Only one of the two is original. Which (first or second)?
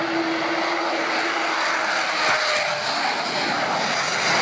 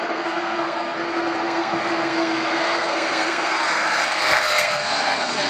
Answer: first